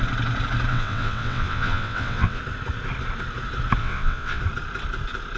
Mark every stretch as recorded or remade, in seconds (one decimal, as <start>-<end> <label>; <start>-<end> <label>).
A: 0.0-0.7 recorded; 0.7-2.4 remade; 2.4-3.8 recorded; 3.8-4.4 remade; 4.4-5.4 recorded